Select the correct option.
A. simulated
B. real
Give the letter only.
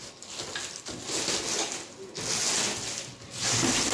B